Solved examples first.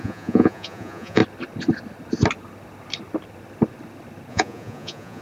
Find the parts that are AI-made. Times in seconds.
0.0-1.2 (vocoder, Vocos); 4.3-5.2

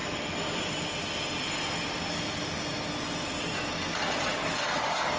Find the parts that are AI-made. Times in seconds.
none

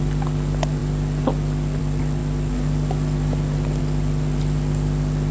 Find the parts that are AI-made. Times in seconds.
none

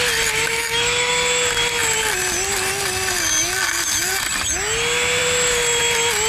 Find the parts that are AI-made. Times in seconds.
0.5-1.1 (autoencoder, DAC-VAE)

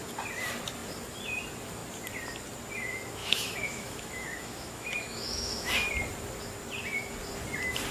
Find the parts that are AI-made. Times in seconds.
3.2-5.7 (autoencoder, DAC-VAE)